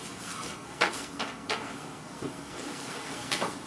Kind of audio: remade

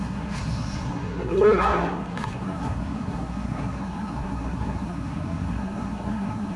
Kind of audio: remade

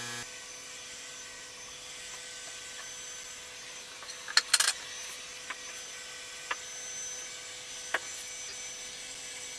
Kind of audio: recorded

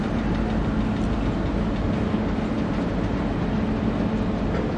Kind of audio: recorded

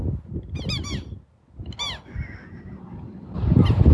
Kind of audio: recorded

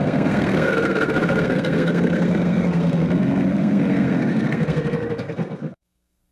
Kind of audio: remade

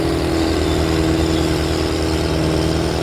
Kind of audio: recorded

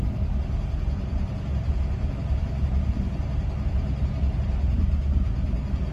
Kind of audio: recorded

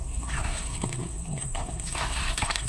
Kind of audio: remade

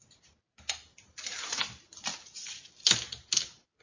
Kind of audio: recorded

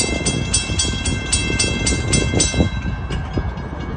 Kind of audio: recorded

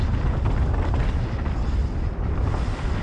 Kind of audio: recorded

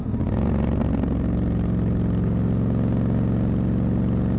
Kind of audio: recorded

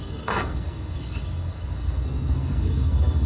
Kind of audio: remade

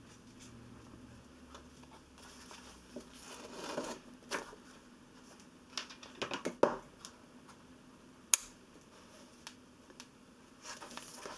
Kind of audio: recorded